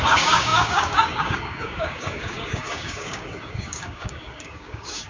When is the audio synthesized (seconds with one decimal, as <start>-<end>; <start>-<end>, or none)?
0.0-5.1

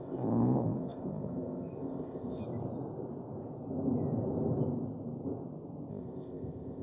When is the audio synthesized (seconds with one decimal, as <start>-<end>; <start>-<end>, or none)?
0.0-2.4; 5.9-6.8

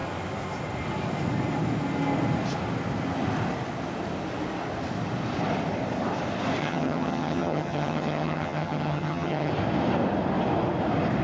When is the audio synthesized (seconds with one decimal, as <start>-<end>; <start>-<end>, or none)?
6.6-9.5